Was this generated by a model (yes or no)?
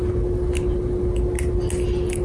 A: no